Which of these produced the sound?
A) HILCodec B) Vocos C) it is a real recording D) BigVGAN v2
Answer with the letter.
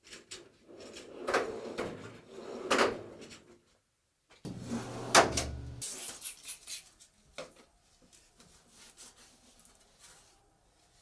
C